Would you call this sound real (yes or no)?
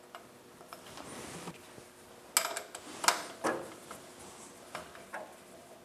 yes